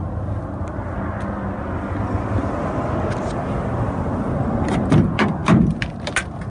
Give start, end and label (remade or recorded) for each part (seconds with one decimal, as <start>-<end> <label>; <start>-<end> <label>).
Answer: 0.0-6.5 recorded